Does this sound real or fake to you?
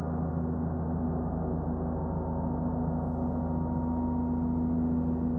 real